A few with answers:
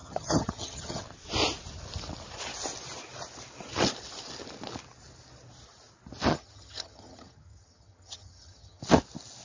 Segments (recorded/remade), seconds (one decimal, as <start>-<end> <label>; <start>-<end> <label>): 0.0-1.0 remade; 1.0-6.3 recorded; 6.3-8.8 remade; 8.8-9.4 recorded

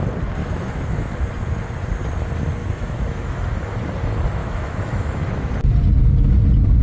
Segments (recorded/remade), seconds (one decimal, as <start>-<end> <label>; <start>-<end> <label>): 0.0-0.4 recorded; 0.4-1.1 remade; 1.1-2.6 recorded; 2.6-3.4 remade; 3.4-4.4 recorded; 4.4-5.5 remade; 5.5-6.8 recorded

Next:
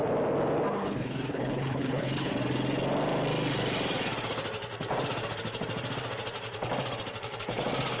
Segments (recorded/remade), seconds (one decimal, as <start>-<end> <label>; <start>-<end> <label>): 0.0-0.7 recorded; 0.7-2.3 remade; 2.3-8.0 recorded

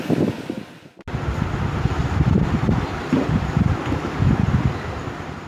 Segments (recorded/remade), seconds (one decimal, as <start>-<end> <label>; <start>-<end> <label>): 0.0-2.0 recorded; 2.0-4.3 remade; 4.3-5.5 recorded

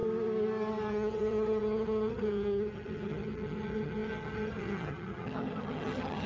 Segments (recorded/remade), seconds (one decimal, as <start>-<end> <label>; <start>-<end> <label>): 0.0-0.9 recorded; 0.9-6.3 remade

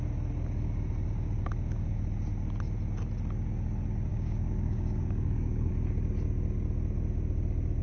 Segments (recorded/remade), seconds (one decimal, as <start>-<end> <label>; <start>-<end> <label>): 0.0-4.1 recorded; 4.1-5.7 remade; 5.7-7.8 recorded

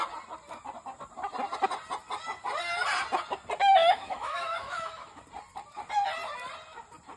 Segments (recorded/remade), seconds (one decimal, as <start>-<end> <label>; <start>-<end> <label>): 0.0-3.6 recorded; 3.6-5.2 remade; 5.2-7.2 recorded

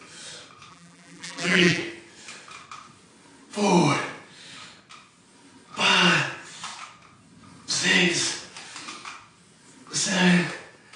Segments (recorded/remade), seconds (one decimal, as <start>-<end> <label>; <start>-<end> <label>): 0.0-0.7 recorded; 0.7-1.8 remade; 1.8-11.0 recorded